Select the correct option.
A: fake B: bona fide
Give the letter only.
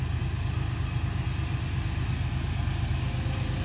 B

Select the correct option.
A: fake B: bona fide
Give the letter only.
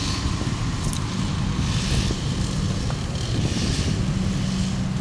B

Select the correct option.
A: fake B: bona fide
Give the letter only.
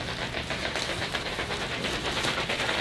B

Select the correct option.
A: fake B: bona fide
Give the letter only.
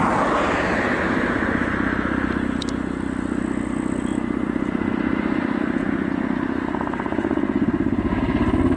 B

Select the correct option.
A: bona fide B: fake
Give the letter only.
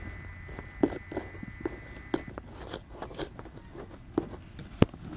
A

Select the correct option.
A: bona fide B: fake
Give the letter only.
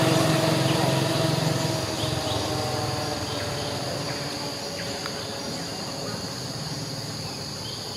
A